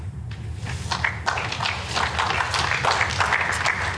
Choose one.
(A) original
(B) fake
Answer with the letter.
A